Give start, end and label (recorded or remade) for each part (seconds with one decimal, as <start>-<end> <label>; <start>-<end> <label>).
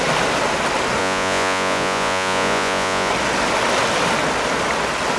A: 0.0-1.0 recorded; 1.0-3.1 remade; 3.1-5.2 recorded